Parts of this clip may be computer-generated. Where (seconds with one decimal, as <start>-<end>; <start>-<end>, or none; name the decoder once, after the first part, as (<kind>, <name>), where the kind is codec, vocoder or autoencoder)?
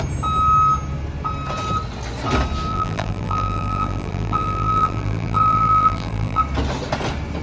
2.7-6.4 (vocoder, BigVGAN v2)